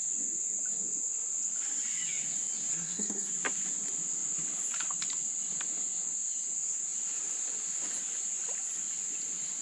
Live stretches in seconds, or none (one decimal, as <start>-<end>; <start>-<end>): 0.0-2.7; 3.3-9.6